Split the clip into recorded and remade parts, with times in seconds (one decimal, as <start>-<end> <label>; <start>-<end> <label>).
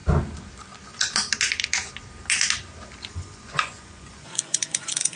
0.0-3.1 recorded; 3.1-5.2 remade